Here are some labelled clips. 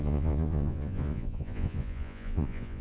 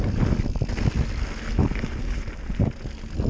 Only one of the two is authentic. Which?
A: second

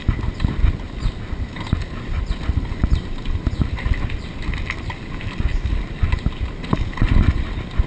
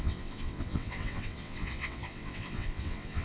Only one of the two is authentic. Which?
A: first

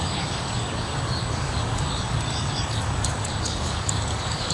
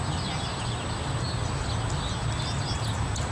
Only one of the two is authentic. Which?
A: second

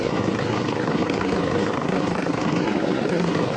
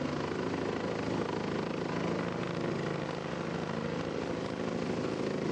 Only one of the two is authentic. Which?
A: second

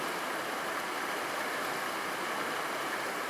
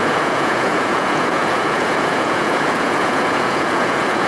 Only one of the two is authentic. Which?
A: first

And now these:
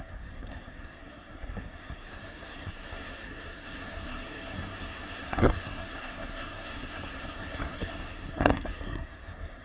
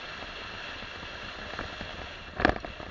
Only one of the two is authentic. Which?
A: second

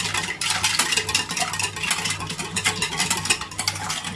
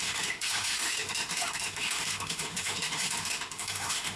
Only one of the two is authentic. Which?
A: first